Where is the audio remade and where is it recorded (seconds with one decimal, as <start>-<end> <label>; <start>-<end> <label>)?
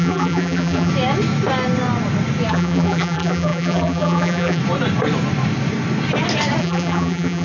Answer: 0.0-0.9 remade; 0.9-2.5 recorded; 2.5-4.6 remade; 4.6-6.6 recorded; 6.6-7.4 remade